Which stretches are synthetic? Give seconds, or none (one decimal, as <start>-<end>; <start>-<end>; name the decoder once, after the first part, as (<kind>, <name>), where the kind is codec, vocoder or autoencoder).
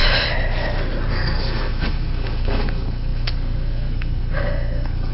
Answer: 1.1-5.1 (codec, SNAC)